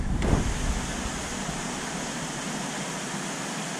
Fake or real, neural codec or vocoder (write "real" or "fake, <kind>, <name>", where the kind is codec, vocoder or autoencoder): real